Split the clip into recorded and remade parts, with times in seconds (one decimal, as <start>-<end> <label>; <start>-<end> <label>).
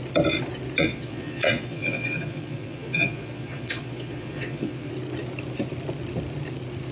0.0-0.8 recorded; 0.8-4.9 remade; 4.9-6.9 recorded